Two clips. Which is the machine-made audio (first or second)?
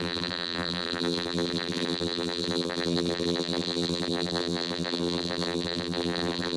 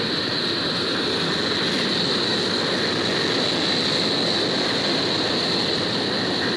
first